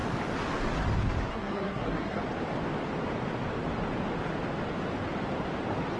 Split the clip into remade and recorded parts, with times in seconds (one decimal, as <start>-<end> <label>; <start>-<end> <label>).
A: 0.0-1.3 recorded; 1.3-2.2 remade; 2.2-6.0 recorded